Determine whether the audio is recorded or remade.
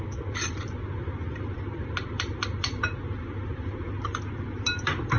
recorded